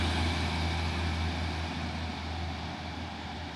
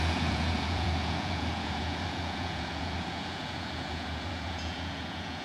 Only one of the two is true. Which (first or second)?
first